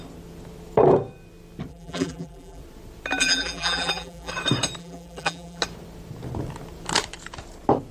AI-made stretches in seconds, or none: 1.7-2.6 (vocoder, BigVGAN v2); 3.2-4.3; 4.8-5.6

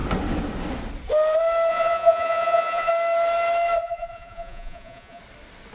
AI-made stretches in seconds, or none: 1.7-2.9 (vocoder, Vocos); 3.8-5.2

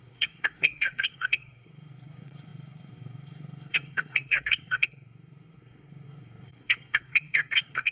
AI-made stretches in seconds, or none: 0.0-7.9 (codec, SNAC)

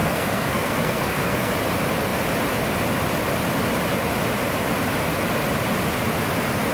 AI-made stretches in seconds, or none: 0.0-1.5 (codec, SNAC)

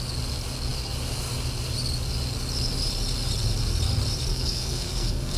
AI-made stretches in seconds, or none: 4.3-5.4 (codec, SNAC)

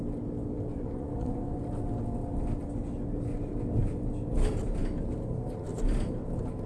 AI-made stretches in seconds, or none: 0.7-1.6 (vocoder, Vocos)

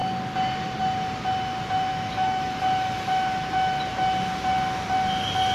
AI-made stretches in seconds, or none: 1.9-2.5 (autoencoder, DAC-VAE)